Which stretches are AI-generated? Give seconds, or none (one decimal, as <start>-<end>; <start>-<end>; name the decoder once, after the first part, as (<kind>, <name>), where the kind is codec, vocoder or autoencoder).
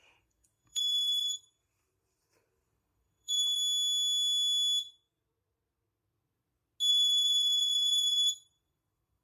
0.0-3.6 (vocoder, BigVGAN v2); 6.9-9.2